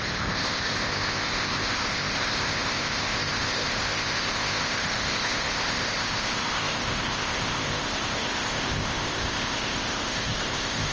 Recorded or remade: remade